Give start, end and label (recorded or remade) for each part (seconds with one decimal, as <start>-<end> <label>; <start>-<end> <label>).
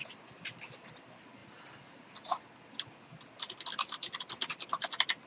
0.0-5.3 recorded